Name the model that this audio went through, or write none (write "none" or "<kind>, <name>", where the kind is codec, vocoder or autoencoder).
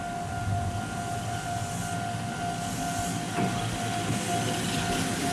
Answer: none